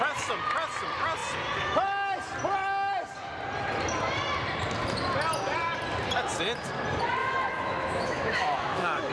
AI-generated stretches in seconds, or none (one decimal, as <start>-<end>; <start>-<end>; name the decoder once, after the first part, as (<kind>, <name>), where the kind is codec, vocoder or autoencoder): 7.2-9.1 (autoencoder, DAC-VAE)